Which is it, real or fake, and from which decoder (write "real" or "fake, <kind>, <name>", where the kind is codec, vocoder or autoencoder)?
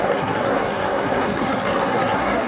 fake, codec, SNAC